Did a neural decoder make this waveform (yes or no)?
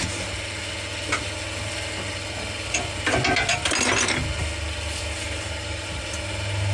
no